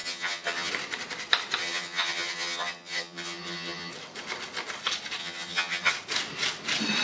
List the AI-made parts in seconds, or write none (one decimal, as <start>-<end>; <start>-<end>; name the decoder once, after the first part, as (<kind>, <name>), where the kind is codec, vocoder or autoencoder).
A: 0.0-0.7 (vocoder, HiFi-GAN); 1.6-3.9; 5.2-5.9